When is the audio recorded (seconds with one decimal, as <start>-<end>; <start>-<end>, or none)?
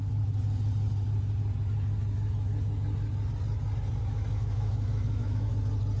0.0-4.0; 5.5-6.0